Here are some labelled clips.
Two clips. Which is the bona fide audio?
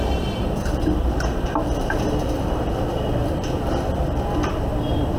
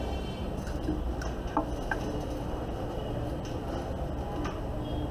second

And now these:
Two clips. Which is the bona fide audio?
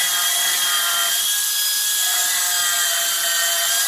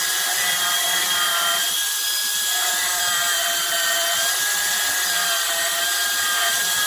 first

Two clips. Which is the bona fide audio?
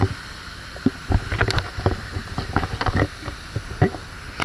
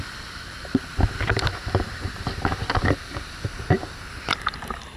first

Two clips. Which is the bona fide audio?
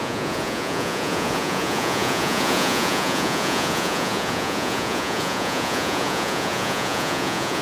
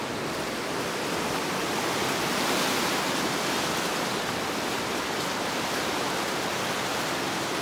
second